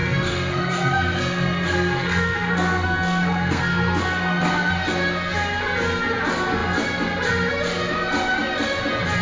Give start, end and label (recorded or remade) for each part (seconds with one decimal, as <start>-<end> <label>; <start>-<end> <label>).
0.0-4.7 remade; 4.7-9.2 recorded